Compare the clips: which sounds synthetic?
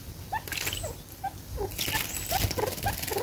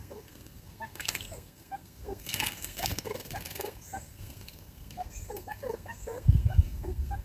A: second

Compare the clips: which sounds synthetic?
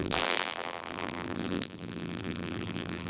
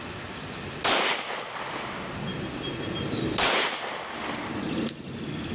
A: first